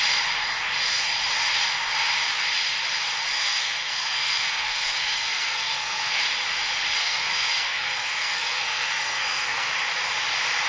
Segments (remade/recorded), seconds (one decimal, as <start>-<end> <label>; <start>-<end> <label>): 0.0-3.3 recorded; 3.3-6.2 remade; 6.2-7.0 recorded; 7.0-9.7 remade; 9.7-10.7 recorded